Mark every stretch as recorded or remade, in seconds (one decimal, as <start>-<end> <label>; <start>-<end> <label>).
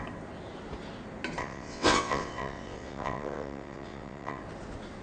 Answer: 0.0-1.4 recorded; 1.4-4.4 remade; 4.4-5.0 recorded